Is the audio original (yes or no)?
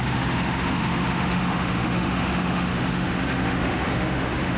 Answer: no